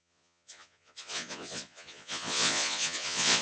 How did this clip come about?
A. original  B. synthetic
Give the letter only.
B